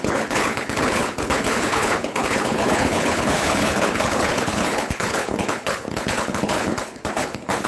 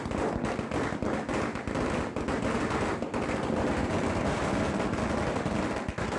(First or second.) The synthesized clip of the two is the first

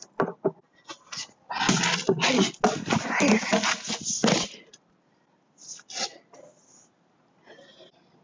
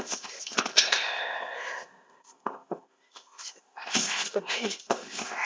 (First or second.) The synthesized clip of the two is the second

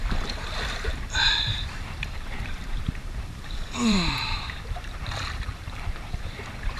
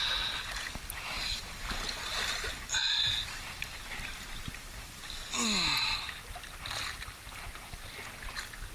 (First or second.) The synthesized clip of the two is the first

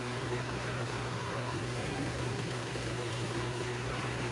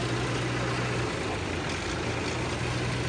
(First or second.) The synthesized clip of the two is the first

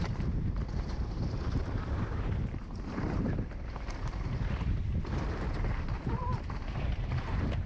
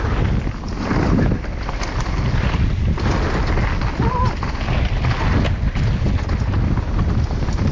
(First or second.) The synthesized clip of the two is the first